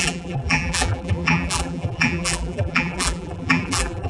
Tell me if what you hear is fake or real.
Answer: fake